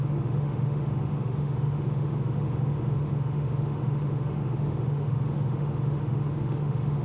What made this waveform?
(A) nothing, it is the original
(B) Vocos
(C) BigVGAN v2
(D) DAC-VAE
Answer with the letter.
D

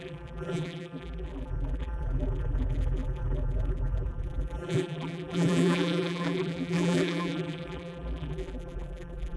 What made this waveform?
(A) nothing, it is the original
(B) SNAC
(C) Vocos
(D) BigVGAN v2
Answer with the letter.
D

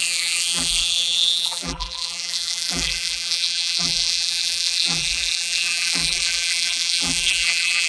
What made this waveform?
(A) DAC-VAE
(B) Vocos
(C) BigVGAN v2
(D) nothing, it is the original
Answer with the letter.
C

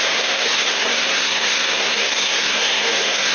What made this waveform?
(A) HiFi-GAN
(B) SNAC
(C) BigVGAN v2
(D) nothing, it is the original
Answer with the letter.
B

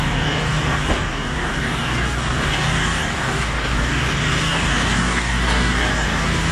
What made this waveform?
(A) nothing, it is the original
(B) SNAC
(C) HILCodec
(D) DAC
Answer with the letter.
D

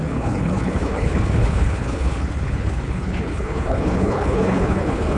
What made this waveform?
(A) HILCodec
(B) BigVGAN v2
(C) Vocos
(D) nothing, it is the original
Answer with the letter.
A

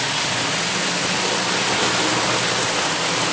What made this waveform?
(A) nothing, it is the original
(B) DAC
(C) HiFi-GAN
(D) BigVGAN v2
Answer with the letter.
A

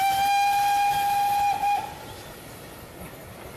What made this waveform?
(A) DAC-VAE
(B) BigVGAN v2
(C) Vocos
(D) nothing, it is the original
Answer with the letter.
D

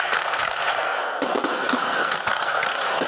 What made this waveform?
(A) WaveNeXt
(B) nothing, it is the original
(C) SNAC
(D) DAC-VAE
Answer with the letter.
C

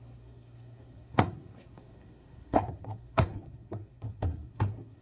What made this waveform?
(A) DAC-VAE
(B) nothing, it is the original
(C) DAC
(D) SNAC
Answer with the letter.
D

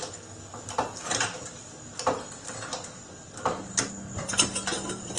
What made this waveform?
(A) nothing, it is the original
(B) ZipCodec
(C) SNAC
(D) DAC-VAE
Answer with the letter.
A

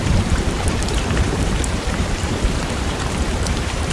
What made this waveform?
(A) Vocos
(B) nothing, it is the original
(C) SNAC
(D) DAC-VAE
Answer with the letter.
B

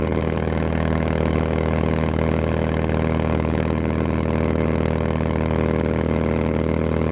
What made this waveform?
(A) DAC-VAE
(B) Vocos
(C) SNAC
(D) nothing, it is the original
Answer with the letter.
A